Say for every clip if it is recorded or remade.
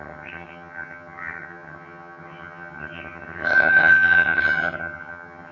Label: remade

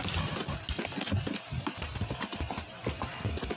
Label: recorded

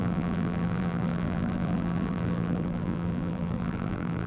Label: remade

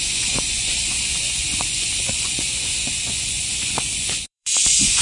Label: remade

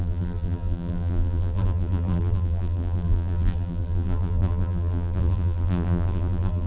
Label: remade